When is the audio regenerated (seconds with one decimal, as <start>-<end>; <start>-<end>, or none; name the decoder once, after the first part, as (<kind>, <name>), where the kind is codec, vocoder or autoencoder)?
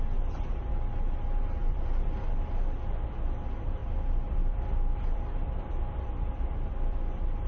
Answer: 1.6-2.2 (vocoder, BigVGAN v2); 3.8-7.0